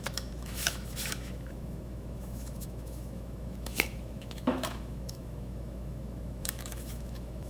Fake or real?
fake